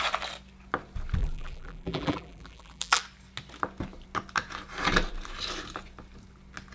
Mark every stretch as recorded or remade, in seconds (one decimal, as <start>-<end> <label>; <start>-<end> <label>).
0.0-1.2 recorded; 1.2-3.0 remade; 3.0-6.7 recorded